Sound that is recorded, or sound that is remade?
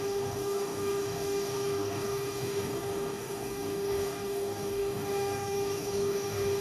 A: remade